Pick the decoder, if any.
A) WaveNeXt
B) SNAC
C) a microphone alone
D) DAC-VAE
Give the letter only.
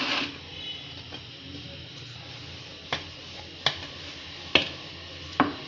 C